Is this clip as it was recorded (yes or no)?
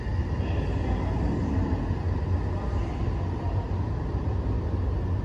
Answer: yes